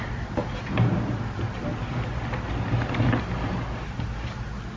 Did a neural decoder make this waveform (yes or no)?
no